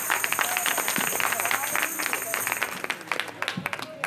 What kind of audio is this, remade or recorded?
recorded